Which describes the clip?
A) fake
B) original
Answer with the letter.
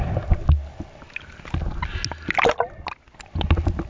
B